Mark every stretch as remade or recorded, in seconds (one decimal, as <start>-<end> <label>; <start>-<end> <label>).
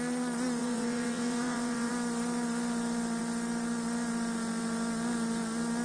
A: 0.0-0.6 recorded; 0.6-1.9 remade; 1.9-5.8 recorded